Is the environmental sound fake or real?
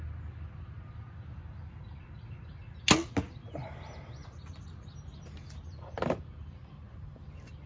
real